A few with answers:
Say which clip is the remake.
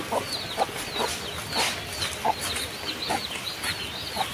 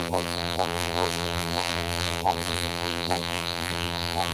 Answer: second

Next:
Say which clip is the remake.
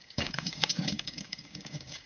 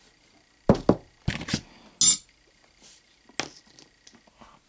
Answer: first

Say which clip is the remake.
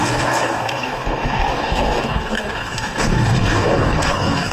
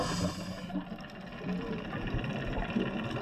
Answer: first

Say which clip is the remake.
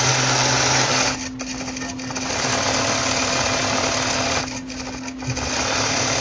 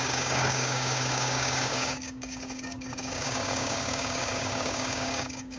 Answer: second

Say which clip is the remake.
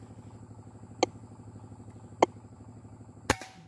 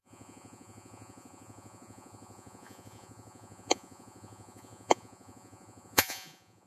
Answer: second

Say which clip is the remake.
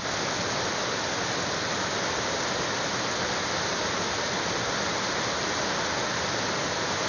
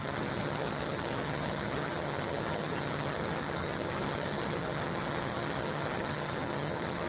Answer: second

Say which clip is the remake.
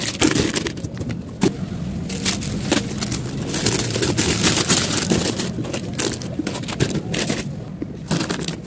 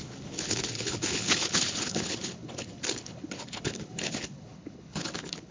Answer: second